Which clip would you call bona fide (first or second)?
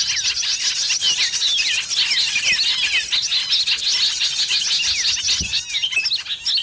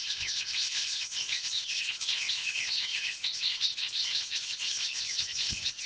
first